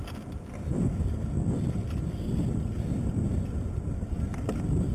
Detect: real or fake real